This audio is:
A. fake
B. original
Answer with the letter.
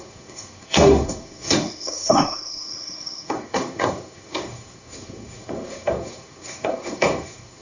A